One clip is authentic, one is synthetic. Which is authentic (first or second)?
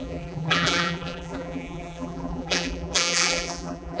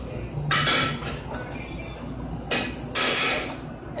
second